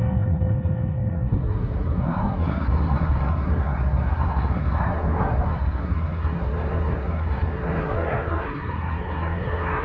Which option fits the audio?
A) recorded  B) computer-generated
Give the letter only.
B